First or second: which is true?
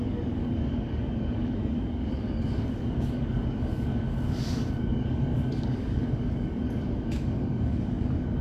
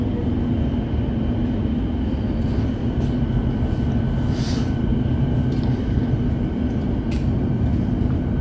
second